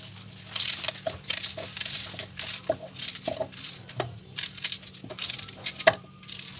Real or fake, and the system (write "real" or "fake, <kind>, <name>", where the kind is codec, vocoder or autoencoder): real